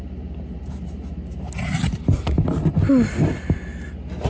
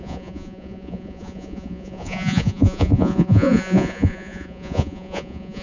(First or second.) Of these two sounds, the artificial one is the second